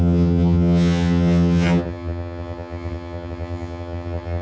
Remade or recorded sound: remade